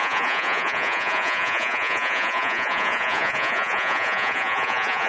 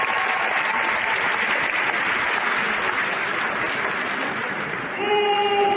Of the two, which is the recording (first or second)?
second